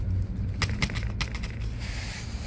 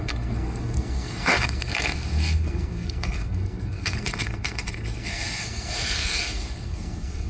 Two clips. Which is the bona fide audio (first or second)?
first